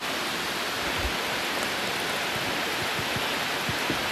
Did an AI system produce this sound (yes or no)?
no